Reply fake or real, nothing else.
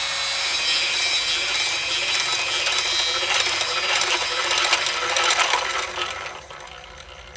real